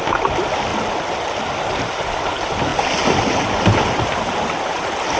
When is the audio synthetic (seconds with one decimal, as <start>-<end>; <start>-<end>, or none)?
none